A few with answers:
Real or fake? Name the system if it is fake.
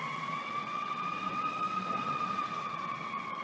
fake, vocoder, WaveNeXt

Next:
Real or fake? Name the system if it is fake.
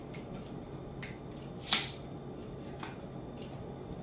real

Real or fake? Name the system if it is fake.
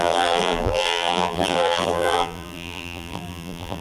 fake, vocoder, BigVGAN v2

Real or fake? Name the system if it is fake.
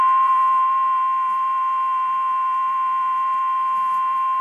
fake, vocoder, BigVGAN v2